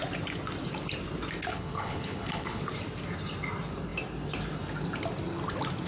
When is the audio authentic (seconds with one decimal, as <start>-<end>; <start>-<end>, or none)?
0.0-1.5; 2.6-5.9